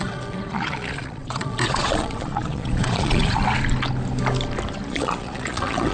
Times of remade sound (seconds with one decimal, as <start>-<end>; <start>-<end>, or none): 0.0-3.4; 4.9-5.9